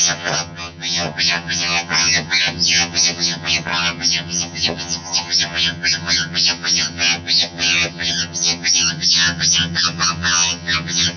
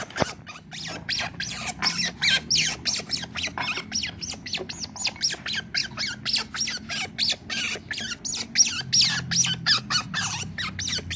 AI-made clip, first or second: first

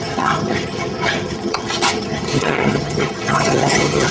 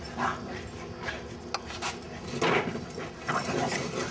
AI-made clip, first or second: first